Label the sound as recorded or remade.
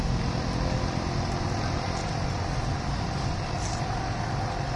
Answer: recorded